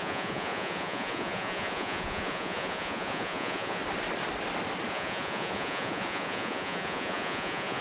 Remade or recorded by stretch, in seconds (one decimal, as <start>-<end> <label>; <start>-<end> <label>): 0.0-3.8 remade; 3.8-4.9 recorded; 4.9-7.8 remade